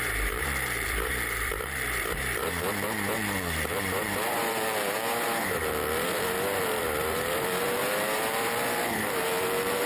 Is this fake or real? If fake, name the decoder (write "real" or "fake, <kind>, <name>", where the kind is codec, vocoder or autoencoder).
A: fake, vocoder, BigVGAN v2